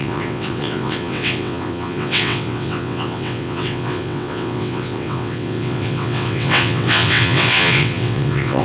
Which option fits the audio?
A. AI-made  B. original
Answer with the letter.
A